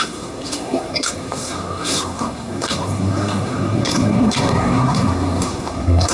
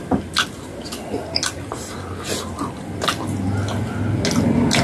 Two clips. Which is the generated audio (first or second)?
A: first